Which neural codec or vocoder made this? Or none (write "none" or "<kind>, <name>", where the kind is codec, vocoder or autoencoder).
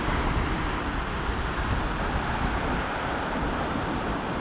none